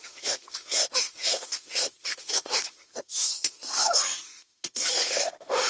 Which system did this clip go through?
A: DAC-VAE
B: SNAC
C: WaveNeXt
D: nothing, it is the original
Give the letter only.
A